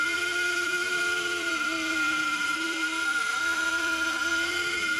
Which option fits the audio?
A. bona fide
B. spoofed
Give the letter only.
B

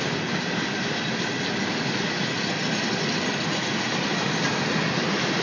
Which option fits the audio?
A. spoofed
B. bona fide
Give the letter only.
B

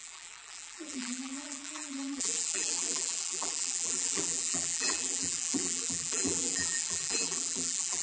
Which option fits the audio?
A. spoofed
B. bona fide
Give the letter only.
A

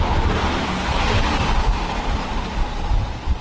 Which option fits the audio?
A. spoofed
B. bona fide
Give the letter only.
B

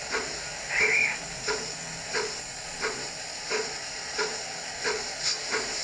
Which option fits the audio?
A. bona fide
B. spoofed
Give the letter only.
A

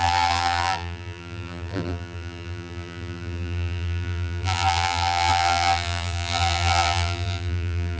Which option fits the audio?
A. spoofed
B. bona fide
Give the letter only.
A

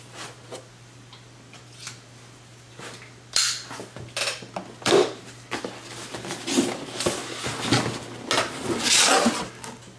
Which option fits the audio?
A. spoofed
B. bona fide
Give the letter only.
B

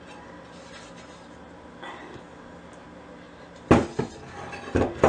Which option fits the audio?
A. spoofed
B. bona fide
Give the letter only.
B